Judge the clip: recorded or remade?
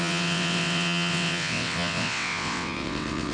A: remade